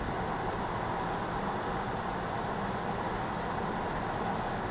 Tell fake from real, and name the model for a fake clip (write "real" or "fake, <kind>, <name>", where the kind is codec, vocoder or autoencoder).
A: real